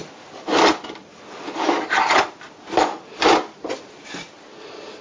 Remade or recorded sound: recorded